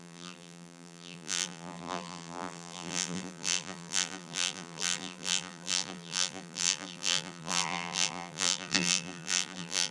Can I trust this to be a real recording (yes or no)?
no